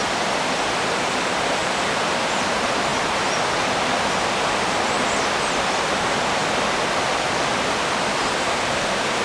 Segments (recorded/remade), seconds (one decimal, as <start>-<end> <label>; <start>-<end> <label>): 0.0-1.6 recorded; 1.6-2.2 remade; 2.2-6.4 recorded; 6.4-7.6 remade; 7.6-9.2 recorded